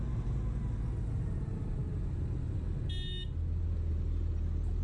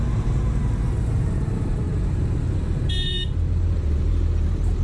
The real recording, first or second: first